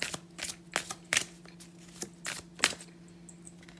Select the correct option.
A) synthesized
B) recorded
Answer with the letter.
B